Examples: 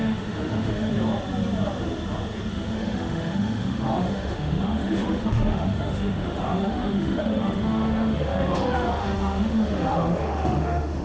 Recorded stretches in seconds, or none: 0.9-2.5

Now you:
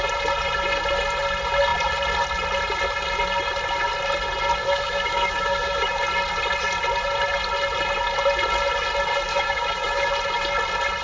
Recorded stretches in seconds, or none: 0.0-4.6; 5.9-9.3; 10.1-11.0